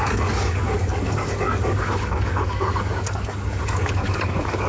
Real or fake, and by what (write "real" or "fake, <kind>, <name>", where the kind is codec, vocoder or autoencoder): fake, codec, DAC